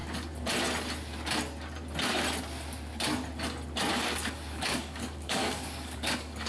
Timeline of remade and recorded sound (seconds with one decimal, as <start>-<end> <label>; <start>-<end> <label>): 0.0-3.9 recorded; 3.9-6.5 remade